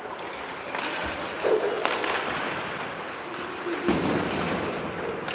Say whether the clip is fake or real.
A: real